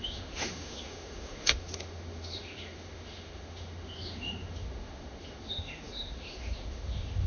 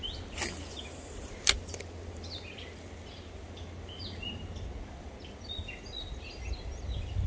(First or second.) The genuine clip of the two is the second